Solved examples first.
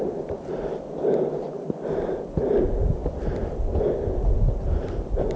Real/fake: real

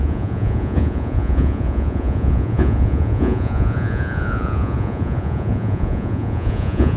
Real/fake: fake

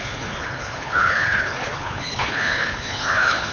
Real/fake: fake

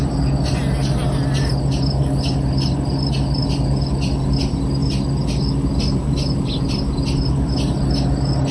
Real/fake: real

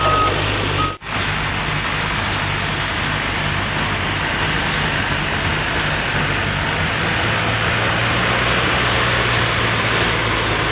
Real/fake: real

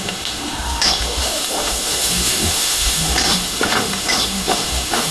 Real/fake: fake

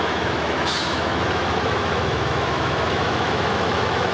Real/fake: fake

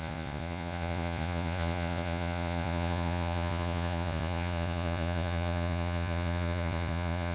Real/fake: fake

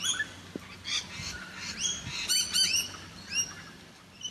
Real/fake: real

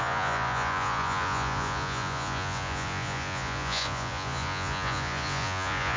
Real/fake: fake